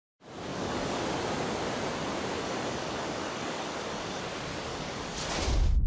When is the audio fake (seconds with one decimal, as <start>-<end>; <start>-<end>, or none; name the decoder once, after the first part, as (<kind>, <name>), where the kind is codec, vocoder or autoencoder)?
0.5-1.0 (codec, DAC); 2.4-4.2; 4.7-5.3